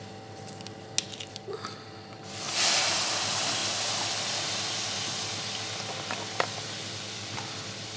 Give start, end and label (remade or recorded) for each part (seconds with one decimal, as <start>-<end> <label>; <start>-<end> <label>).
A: 0.0-8.0 recorded